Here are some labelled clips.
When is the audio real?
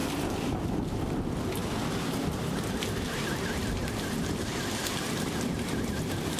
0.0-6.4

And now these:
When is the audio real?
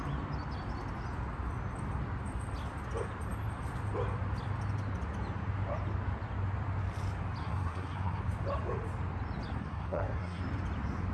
0.0-7.4; 8.2-9.6; 10.4-11.1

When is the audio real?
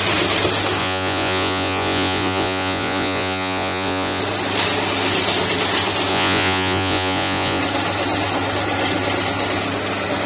0.0-0.8; 4.2-6.1; 7.6-10.3